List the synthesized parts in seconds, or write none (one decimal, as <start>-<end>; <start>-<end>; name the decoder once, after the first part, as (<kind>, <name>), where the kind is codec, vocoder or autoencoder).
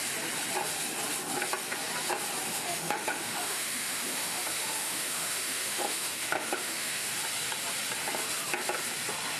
2.5-7.1 (autoencoder, DAC-VAE)